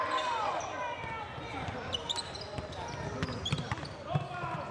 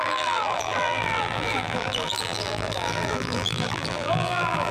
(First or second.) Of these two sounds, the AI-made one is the second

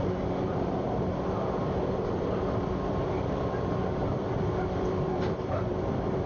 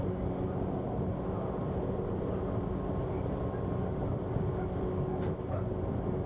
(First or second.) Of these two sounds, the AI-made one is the first